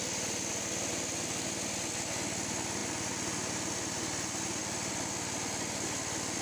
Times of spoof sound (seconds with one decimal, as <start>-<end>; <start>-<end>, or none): none

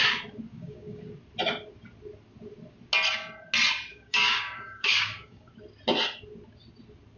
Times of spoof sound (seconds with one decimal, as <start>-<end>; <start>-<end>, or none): 0.5-1.0; 3.9-5.5

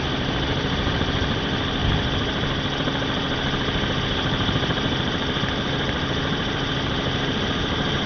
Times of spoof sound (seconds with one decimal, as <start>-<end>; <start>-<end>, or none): 0.0-1.8; 4.0-8.1

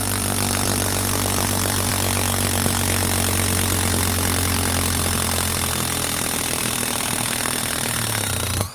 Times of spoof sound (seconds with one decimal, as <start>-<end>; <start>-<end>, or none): 0.0-1.9

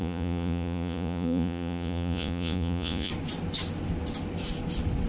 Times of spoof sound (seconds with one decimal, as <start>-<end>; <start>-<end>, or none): 0.0-3.1